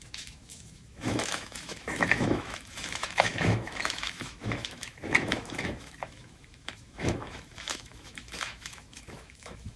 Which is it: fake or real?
fake